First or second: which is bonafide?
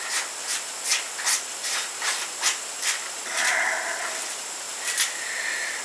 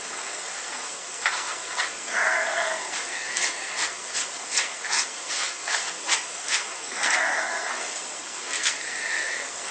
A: first